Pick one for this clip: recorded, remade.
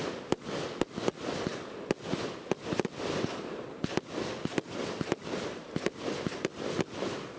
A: recorded